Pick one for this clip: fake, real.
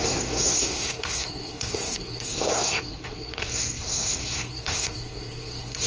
fake